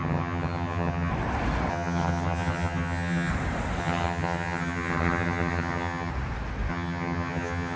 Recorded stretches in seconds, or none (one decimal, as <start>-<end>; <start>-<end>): 1.1-1.7; 3.3-3.8; 6.1-6.7